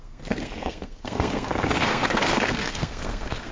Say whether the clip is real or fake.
fake